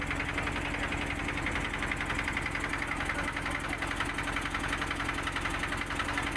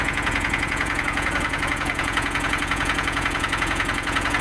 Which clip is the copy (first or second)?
second